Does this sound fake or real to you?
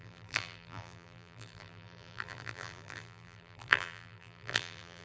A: fake